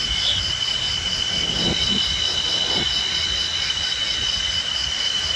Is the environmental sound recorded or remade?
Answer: recorded